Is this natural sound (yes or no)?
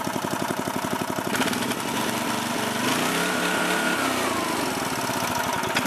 yes